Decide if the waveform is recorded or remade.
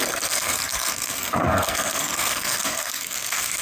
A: remade